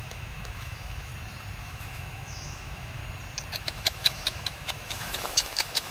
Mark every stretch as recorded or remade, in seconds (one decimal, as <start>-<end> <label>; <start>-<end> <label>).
0.0-1.1 remade; 1.1-1.6 recorded; 1.6-3.0 remade; 3.0-3.6 recorded; 3.6-5.9 remade